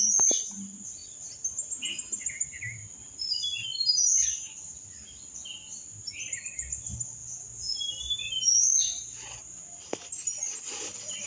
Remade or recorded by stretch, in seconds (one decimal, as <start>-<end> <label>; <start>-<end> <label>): 0.0-7.2 recorded; 7.2-9.6 remade; 9.6-11.3 recorded